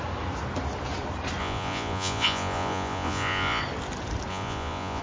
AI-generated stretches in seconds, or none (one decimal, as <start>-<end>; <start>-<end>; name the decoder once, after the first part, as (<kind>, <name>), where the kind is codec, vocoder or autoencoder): 1.4-3.6 (vocoder, Vocos); 4.3-5.0